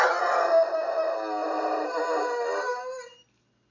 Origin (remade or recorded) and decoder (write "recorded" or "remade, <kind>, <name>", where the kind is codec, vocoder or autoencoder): recorded